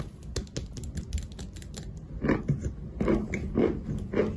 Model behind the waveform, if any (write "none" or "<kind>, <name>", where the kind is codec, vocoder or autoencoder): none